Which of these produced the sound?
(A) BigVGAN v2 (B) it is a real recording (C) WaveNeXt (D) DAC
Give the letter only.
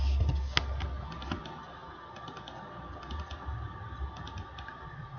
B